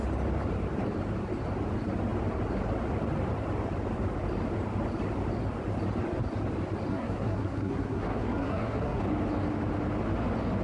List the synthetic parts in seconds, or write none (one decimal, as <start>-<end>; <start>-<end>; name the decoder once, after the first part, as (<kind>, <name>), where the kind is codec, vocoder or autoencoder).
6.9-9.0 (codec, SNAC)